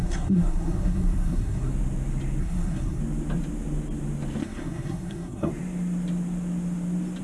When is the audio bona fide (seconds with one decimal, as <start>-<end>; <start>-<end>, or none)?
1.7-2.4; 3.0-4.4; 5.5-7.2